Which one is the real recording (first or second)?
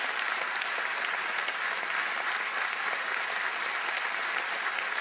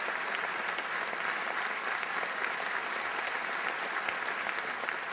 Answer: second